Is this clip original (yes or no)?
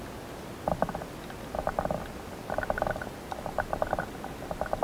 yes